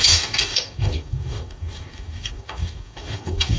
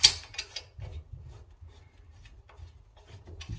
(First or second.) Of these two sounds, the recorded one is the second